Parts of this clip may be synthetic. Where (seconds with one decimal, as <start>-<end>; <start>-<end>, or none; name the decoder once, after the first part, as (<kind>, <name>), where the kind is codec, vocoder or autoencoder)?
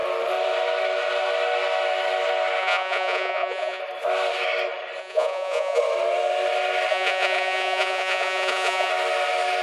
2.6-3.8 (vocoder, Vocos); 5.0-5.8; 6.9-8.9